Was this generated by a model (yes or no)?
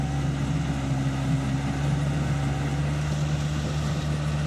no